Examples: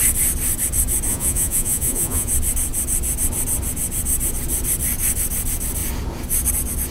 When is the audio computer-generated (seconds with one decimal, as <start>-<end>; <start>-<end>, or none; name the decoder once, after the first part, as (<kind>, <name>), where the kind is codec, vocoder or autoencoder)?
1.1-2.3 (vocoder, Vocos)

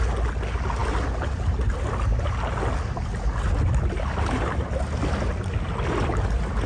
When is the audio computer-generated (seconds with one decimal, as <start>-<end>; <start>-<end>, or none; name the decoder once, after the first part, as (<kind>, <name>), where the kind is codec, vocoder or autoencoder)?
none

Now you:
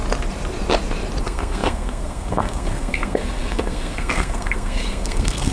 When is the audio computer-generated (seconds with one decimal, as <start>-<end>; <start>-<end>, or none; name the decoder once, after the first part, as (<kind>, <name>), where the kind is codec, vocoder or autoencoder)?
1.2-5.5 (codec, SNAC)